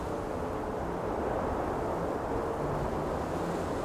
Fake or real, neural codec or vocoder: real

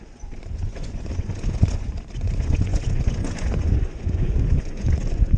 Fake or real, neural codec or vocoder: fake, vocoder, Vocos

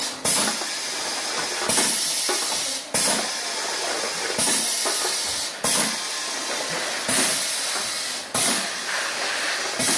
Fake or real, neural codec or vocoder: real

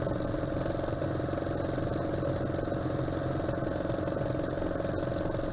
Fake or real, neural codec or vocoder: real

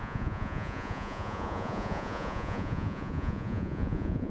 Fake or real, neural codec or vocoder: fake, vocoder, Vocos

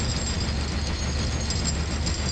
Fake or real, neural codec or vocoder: real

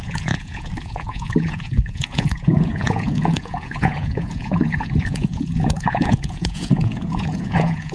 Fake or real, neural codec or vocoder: fake, vocoder, Vocos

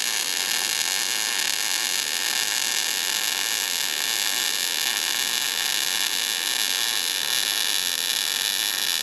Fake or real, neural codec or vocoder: real